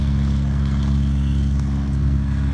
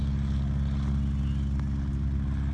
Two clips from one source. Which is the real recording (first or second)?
second